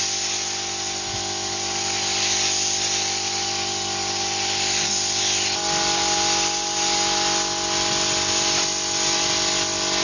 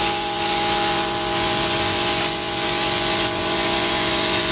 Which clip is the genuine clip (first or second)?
first